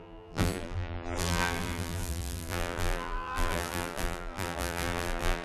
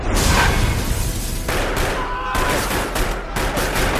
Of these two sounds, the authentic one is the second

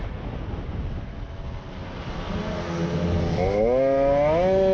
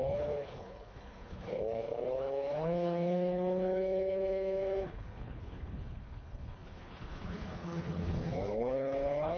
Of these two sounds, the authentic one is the first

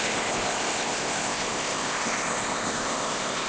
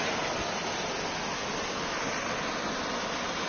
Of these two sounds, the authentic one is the second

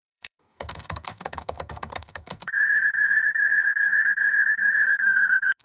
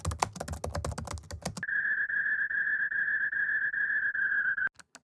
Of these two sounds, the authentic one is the second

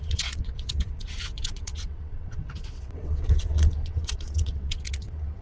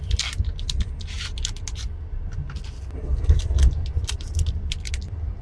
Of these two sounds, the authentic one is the second